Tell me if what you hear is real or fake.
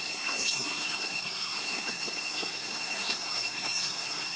fake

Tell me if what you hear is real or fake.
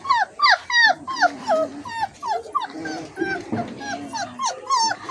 real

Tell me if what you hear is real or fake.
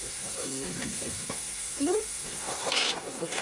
fake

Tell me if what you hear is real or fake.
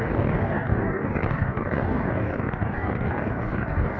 fake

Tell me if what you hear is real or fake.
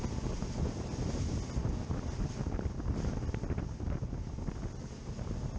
real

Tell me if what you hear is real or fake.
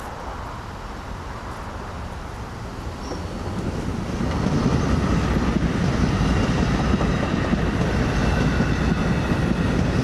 real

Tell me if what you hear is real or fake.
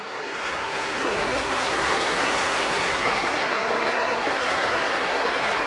fake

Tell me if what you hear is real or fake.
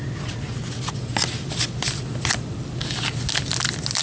real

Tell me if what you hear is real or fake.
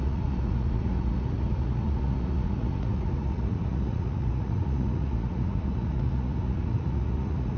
fake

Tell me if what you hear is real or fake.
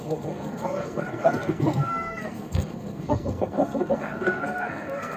fake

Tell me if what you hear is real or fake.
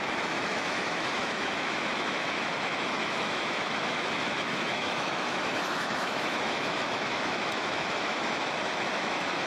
fake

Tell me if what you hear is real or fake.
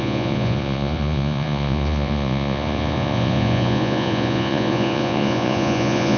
fake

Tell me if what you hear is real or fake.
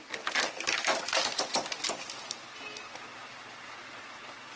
real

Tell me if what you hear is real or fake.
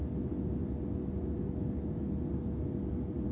real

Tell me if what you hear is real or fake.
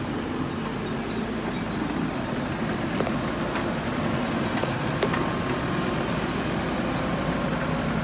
real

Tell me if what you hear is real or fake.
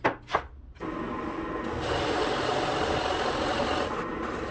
real